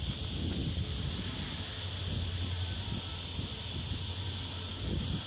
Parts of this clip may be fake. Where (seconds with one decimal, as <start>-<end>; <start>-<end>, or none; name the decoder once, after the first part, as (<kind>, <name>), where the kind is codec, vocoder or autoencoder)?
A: none